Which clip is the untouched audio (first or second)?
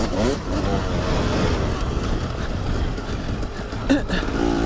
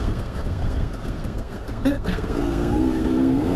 first